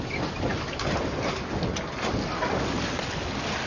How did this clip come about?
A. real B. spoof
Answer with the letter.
A